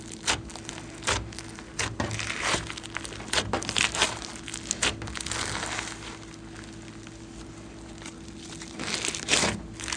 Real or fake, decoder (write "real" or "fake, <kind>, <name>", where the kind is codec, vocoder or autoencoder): real